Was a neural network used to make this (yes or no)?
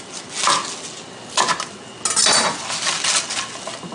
no